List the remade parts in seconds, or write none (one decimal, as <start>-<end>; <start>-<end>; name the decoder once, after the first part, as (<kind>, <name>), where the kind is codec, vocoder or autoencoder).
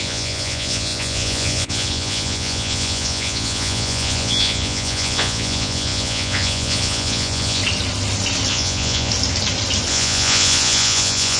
0.0-7.6 (vocoder, Vocos); 8.5-9.1; 9.9-11.4